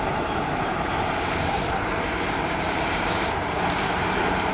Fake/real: fake